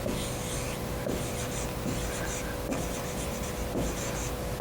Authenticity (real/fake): real